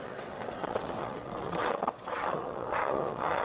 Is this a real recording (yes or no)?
no